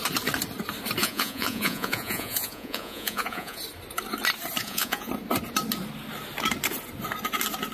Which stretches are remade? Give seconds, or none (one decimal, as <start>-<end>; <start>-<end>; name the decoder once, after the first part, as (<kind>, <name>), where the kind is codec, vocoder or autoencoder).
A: 1.0-3.6 (vocoder, Vocos); 4.6-5.1